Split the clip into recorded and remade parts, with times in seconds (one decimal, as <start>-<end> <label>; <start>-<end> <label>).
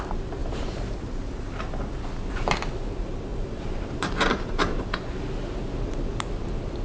0.0-0.4 recorded; 0.4-1.1 remade; 1.1-3.3 recorded; 3.3-4.8 remade; 4.8-6.8 recorded